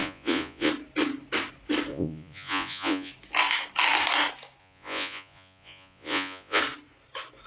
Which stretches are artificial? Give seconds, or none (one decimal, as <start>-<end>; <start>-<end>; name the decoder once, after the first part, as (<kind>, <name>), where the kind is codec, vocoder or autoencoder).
0.0-0.7 (vocoder, Vocos); 1.9-3.1; 4.6-6.6